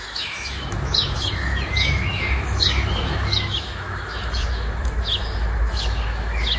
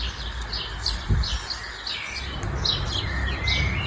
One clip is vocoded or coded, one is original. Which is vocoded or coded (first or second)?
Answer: first